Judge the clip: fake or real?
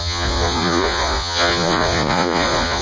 fake